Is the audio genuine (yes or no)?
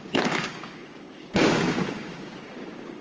no